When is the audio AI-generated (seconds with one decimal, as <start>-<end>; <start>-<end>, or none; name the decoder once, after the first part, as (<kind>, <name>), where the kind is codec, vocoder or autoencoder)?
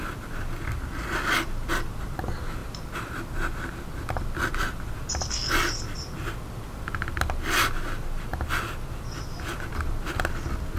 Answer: none